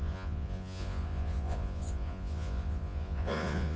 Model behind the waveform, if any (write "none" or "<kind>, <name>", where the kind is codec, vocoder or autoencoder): vocoder, Vocos